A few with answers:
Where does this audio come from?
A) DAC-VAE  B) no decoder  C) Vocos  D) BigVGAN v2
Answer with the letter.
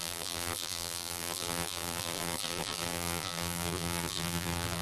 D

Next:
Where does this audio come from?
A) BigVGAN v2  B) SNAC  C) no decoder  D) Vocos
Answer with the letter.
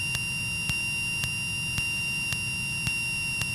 C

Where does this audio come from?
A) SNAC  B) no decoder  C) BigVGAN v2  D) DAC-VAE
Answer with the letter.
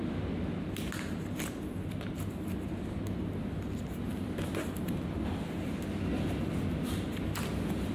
B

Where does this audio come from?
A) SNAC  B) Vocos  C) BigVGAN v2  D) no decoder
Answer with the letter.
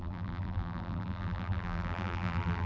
C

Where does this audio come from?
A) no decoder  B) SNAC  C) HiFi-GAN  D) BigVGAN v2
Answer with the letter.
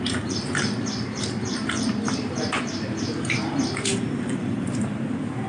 D